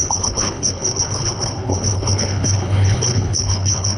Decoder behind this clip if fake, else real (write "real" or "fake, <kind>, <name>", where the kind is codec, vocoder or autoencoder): fake, codec, HILCodec